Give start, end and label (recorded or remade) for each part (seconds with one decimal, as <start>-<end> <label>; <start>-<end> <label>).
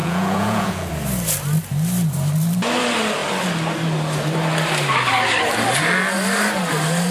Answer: 0.0-0.9 remade; 0.9-7.1 recorded